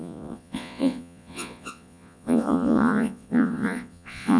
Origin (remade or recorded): remade